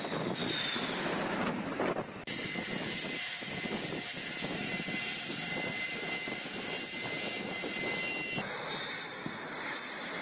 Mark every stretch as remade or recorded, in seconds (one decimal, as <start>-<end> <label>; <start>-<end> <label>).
0.0-10.2 recorded